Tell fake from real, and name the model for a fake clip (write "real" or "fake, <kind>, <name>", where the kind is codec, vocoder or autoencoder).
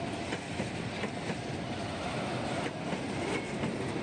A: real